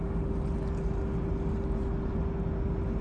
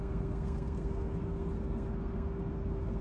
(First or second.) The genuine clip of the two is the first